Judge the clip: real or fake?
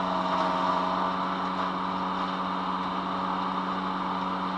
real